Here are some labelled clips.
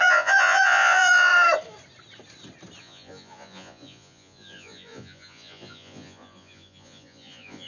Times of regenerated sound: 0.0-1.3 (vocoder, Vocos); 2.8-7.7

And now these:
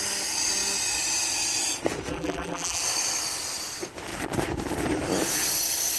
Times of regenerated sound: 2.1-2.8 (vocoder, BigVGAN v2)

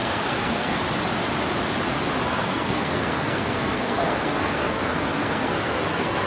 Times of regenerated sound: 0.0-0.8 (codec, SNAC); 2.3-6.3

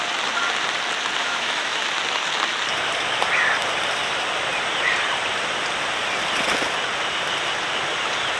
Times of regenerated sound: 1.2-1.8 (autoencoder, DAC-VAE)

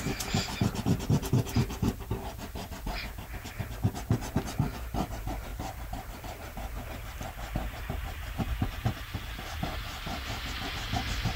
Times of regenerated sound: none

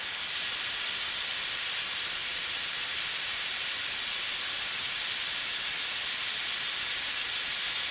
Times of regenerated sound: none

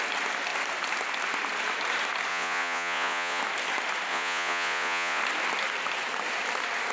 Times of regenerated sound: 2.3-3.4 (vocoder, Vocos); 4.1-5.2

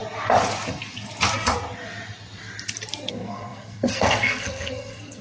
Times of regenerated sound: 3.1-5.2 (codec, SNAC)